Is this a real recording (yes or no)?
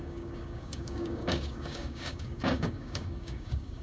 no